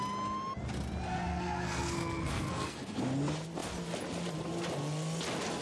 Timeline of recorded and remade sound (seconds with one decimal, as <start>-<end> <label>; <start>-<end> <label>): 0.0-1.3 recorded; 1.3-3.0 remade; 3.0-5.6 recorded